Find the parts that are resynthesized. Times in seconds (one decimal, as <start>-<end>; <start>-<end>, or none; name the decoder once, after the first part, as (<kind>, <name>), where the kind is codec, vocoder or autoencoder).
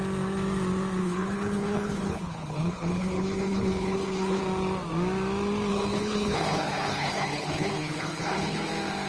1.0-4.4 (codec, HILCodec); 5.7-8.7